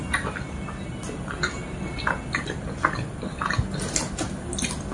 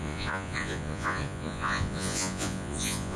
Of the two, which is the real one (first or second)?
first